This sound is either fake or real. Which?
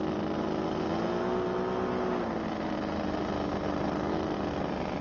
real